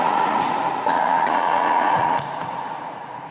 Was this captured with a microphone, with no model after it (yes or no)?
no